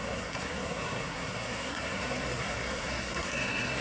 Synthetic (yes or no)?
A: yes